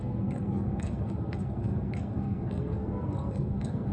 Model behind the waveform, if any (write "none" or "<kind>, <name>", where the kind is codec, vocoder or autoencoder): codec, SNAC